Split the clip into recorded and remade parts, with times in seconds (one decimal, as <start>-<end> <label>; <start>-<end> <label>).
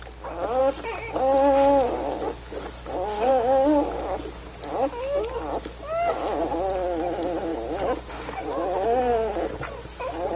0.0-10.4 recorded